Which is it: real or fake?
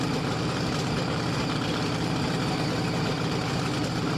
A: fake